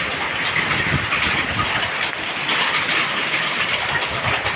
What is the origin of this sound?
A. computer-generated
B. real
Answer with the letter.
B